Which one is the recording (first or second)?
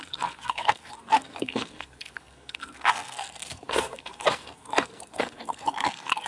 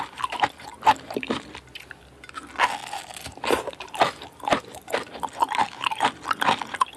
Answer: second